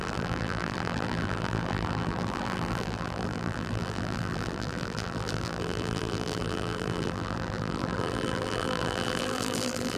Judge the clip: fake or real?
fake